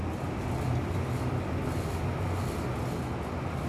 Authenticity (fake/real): real